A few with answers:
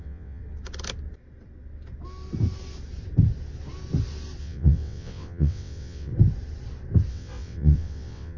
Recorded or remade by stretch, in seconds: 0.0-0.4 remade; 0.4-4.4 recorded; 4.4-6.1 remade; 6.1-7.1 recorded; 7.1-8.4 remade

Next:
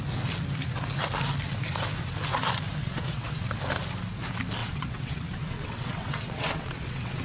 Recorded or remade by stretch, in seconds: 0.0-2.8 recorded; 2.8-3.5 remade; 3.5-4.6 recorded; 4.6-7.2 remade

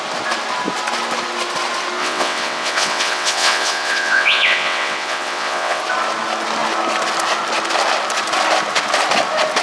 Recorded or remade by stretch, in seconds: 0.0-2.0 recorded; 2.0-5.8 remade; 5.8-9.6 recorded

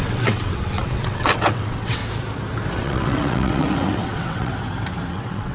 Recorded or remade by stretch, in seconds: 0.0-2.0 remade; 2.0-2.7 recorded; 2.7-4.5 remade; 4.5-5.1 recorded; 5.1-5.5 remade

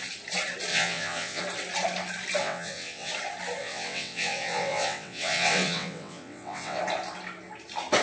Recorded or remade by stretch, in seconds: 0.0-0.7 recorded; 0.7-1.4 remade; 1.4-2.4 recorded; 2.4-3.1 remade; 3.1-3.6 recorded; 3.6-6.8 remade; 6.8-8.0 recorded

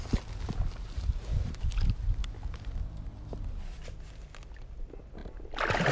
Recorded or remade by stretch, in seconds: 0.0-5.9 recorded